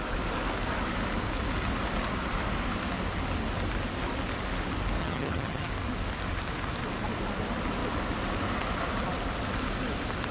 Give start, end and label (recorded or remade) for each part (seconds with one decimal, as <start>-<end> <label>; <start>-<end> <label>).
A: 0.0-5.0 recorded; 5.0-5.7 remade; 5.7-10.3 recorded